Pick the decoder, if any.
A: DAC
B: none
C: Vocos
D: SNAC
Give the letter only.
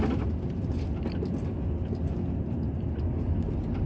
B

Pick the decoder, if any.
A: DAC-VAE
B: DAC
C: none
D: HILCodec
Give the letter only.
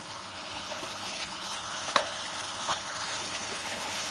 D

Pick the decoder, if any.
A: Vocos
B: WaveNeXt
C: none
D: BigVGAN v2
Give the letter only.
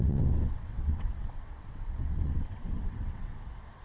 B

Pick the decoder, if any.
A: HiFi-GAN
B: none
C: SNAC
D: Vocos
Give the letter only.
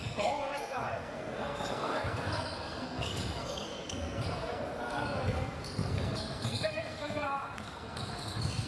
C